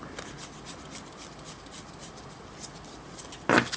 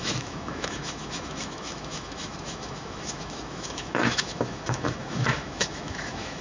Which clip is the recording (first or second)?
first